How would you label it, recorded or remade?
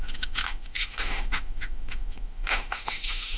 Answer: remade